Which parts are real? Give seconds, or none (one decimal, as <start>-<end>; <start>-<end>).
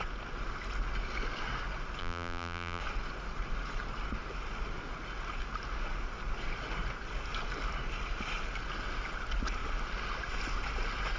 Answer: 0.0-2.0; 2.8-11.2